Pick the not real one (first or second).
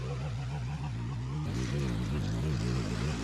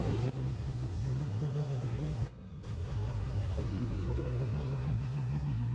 second